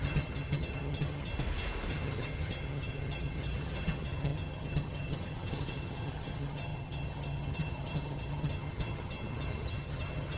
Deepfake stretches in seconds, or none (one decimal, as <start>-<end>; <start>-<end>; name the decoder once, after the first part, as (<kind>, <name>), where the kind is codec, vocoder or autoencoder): 0.0-1.3 (vocoder, HiFi-GAN); 1.9-10.4